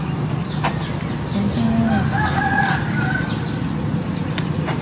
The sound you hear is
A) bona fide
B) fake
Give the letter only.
A